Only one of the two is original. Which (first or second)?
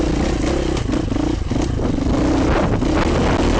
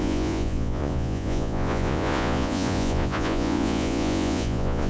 first